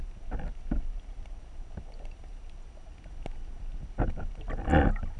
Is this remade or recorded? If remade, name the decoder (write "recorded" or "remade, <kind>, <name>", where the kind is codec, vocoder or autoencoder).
recorded